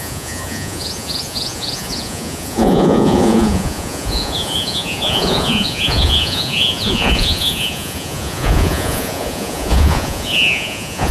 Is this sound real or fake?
fake